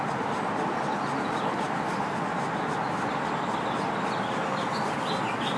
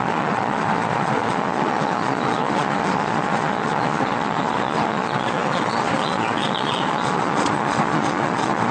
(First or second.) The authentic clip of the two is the first